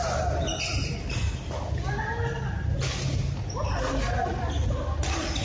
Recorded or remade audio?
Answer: recorded